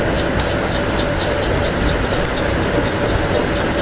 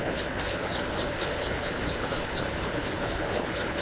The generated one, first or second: second